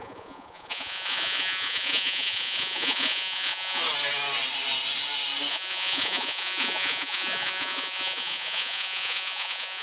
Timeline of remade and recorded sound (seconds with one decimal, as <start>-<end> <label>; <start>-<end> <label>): 0.0-3.8 remade; 3.8-5.5 recorded; 5.5-9.8 remade